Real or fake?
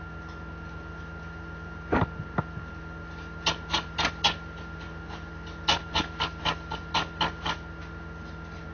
real